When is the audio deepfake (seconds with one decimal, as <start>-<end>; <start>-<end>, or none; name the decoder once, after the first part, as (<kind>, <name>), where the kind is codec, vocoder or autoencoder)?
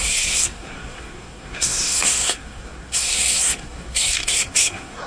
0.0-5.1 (codec, SNAC)